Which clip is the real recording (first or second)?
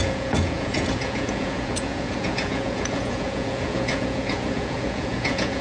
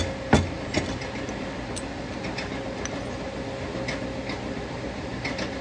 second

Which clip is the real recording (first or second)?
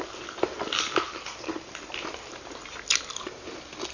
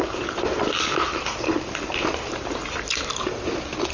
first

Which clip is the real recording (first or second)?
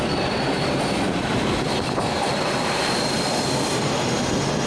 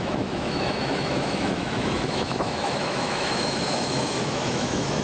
first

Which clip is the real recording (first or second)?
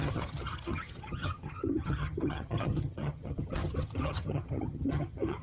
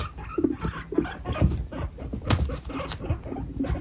second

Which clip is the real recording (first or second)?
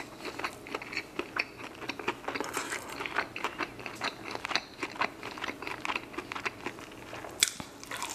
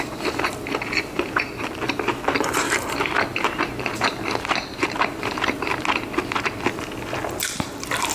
first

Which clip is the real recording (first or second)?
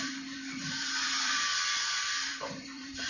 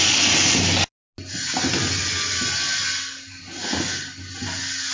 second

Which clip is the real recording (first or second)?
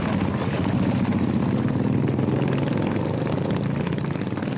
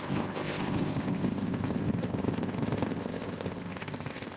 first